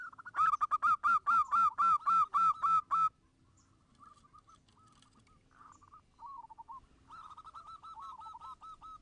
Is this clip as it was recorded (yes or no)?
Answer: yes